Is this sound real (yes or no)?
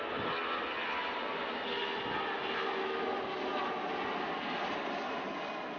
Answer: yes